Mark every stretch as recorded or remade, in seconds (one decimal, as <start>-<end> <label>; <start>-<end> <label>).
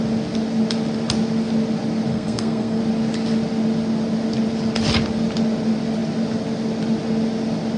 0.0-2.1 recorded; 2.1-2.8 remade; 2.8-7.8 recorded